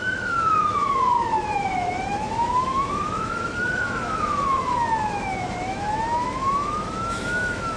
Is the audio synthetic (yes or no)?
yes